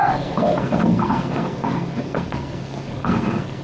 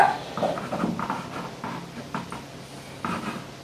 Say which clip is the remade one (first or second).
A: first